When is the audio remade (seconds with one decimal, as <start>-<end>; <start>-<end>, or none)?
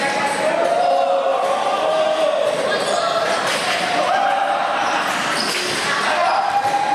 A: 1.3-5.4